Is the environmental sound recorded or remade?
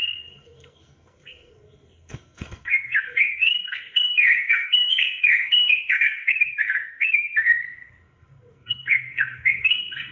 remade